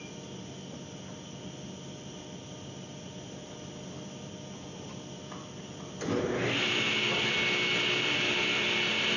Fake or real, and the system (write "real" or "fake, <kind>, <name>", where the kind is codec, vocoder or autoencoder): real